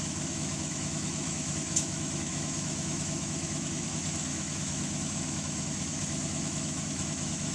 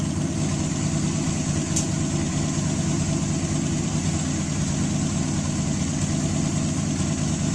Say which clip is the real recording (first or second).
second